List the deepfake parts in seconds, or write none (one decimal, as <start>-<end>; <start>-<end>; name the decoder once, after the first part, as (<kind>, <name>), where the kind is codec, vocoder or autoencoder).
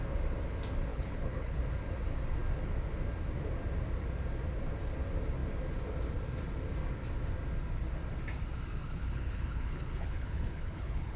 0.9-1.6 (codec, HILCodec); 8.8-11.2